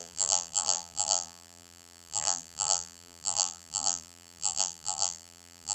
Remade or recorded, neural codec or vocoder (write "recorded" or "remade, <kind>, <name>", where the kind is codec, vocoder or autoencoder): remade, vocoder, BigVGAN v2